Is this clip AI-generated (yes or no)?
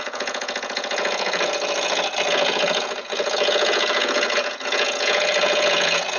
yes